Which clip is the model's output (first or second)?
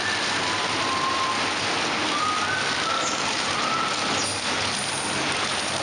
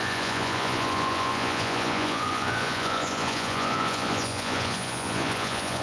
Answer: second